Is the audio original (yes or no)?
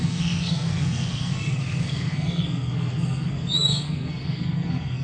no